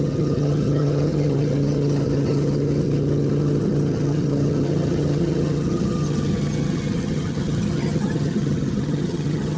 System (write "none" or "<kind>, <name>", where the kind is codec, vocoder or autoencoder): vocoder, HiFi-GAN